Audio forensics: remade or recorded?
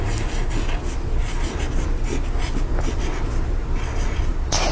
recorded